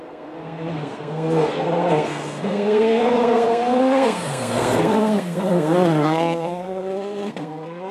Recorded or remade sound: remade